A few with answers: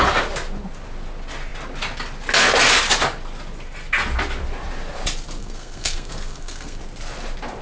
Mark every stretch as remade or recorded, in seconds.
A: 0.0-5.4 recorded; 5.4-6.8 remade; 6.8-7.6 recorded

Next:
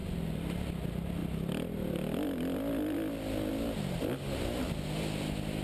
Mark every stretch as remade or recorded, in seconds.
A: 0.0-5.6 recorded

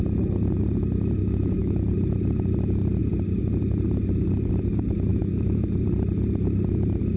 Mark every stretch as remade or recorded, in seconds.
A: 0.0-1.2 recorded; 1.2-1.8 remade; 1.8-5.1 recorded; 5.1-5.7 remade; 5.7-7.2 recorded

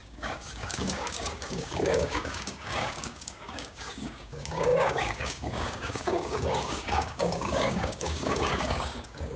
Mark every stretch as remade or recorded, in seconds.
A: 0.0-9.4 remade